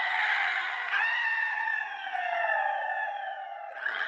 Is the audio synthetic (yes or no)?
yes